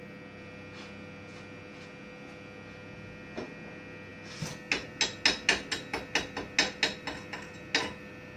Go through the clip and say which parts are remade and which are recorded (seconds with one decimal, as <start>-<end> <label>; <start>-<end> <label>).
0.0-8.4 recorded